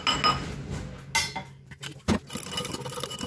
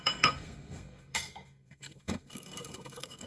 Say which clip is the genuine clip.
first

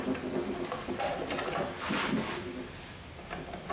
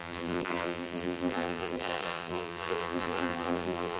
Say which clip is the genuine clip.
first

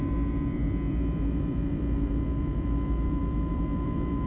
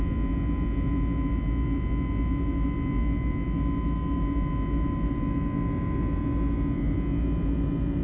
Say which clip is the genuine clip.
second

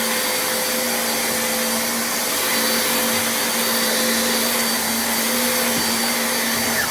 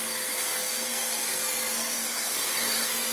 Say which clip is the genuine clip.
first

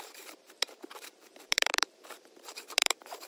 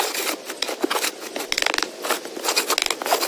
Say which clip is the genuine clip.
second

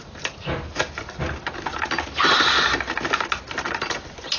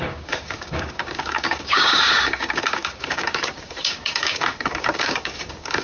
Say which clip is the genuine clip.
first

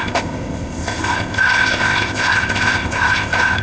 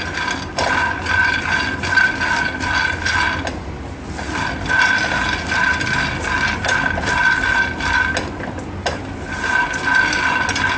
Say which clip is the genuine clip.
second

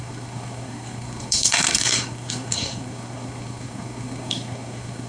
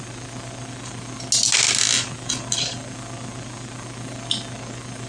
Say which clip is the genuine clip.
second